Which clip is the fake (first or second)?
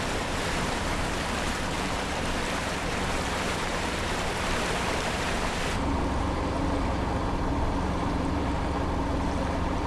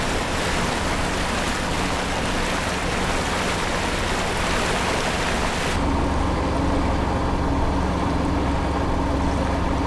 first